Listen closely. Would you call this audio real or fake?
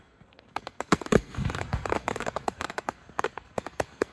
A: fake